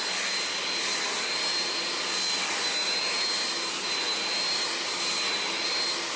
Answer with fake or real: real